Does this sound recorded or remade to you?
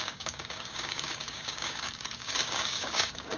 remade